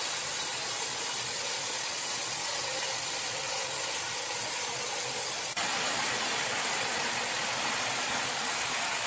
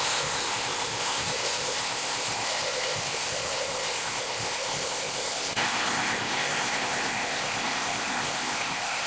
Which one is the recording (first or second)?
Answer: first